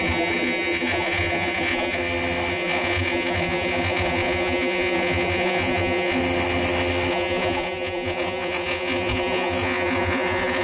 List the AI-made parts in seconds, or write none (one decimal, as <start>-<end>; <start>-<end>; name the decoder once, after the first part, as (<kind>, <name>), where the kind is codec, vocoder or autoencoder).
0.0-2.0 (vocoder, Vocos); 2.5-6.2; 7.1-10.6